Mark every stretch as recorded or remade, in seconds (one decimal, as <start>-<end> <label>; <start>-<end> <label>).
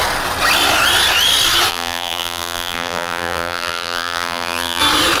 0.0-1.7 recorded; 1.7-4.8 remade; 4.8-5.2 recorded